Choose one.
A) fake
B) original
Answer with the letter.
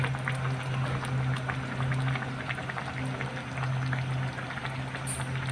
B